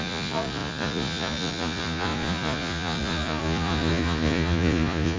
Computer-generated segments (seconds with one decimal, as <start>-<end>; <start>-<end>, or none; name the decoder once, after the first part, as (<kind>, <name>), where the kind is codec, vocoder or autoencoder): 0.0-5.2 (vocoder, Vocos)